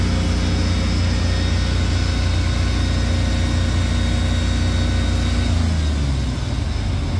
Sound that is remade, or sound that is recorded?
recorded